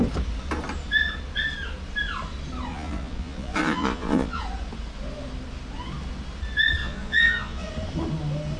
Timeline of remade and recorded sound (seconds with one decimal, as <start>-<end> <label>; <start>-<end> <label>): 0.0-2.7 recorded; 2.7-4.4 remade; 4.4-6.8 recorded; 6.8-7.7 remade; 7.7-8.6 recorded